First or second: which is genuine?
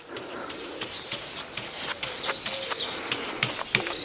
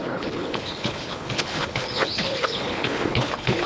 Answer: first